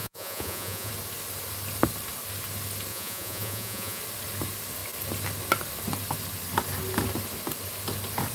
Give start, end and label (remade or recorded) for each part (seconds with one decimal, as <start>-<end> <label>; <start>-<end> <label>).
0.0-0.9 remade; 0.9-2.9 recorded; 2.9-4.0 remade; 4.0-8.3 recorded